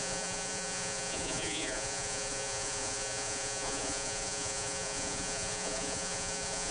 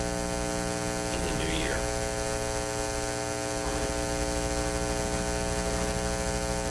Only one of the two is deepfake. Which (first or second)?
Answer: first